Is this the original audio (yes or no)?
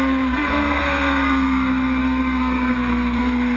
no